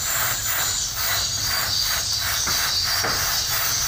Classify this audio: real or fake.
real